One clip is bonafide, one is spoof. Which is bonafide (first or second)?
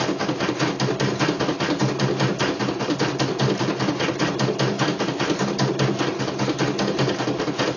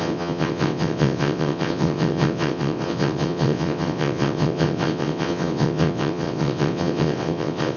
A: first